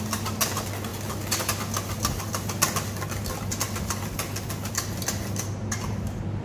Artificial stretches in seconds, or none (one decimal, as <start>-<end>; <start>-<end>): none